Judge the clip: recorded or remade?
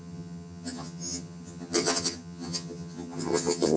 remade